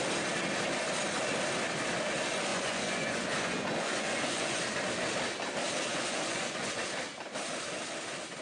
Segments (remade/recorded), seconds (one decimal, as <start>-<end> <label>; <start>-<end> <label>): 0.0-2.5 recorded; 2.5-4.6 remade; 4.6-5.9 recorded; 5.9-6.8 remade; 6.8-8.4 recorded